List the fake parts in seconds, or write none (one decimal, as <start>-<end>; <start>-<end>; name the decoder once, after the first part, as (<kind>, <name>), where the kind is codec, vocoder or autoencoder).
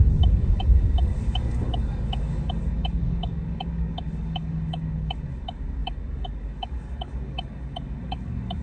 0.0-8.6 (codec, DAC)